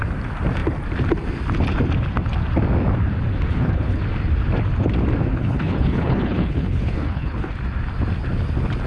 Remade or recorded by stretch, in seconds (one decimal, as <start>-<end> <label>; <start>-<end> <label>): 0.0-3.5 recorded; 3.5-4.0 remade; 4.0-5.3 recorded; 5.3-7.5 remade; 7.5-8.9 recorded